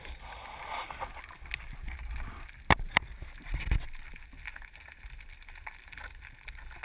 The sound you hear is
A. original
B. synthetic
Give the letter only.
A